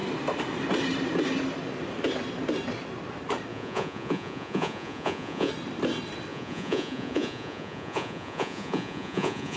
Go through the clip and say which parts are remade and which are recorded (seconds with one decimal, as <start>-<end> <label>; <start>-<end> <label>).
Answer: 0.0-3.5 recorded; 3.5-5.5 remade; 5.5-6.3 recorded; 6.3-9.6 remade

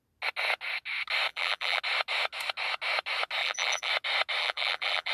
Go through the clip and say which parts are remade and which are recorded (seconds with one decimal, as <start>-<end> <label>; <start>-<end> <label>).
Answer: 0.0-1.3 recorded; 1.3-1.8 remade; 1.8-3.4 recorded; 3.4-3.9 remade; 3.9-4.4 recorded; 4.4-5.1 remade

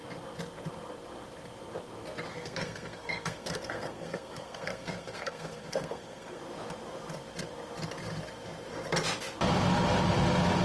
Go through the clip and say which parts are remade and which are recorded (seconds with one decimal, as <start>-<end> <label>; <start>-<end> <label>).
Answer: 0.0-2.3 recorded; 2.3-6.4 remade; 6.4-10.6 recorded

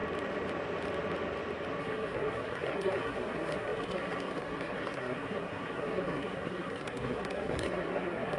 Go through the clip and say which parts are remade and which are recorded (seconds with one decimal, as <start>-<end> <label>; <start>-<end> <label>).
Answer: 0.0-1.8 recorded; 1.8-8.4 remade

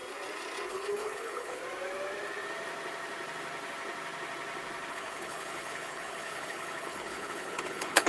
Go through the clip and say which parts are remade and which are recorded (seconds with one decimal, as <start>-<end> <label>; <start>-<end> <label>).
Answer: 0.0-0.7 recorded; 0.7-1.6 remade; 1.6-4.9 recorded; 4.9-8.1 remade

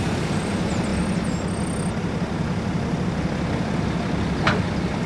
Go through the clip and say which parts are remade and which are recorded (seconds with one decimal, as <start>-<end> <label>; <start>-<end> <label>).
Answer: 0.0-5.1 recorded